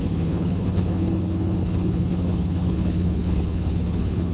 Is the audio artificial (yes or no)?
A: yes